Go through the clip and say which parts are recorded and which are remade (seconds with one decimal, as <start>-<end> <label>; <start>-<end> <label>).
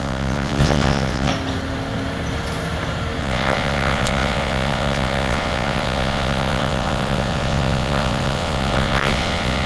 0.0-1.3 remade; 1.3-3.2 recorded; 3.2-9.7 remade